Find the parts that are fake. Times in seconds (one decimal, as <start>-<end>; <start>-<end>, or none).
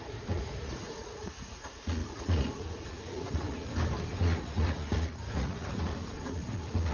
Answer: 0.0-3.7; 4.2-6.9